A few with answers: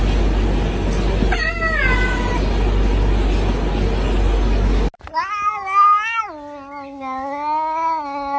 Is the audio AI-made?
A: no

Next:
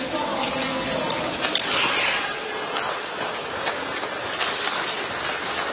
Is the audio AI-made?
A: no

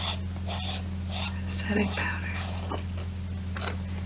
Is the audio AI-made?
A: no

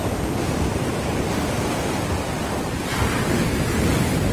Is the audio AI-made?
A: no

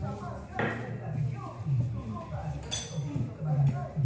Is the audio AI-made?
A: no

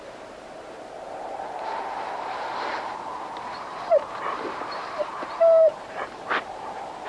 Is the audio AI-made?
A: yes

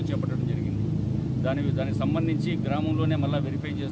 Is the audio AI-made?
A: no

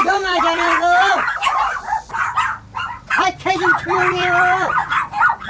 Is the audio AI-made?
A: yes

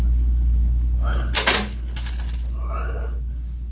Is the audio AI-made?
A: no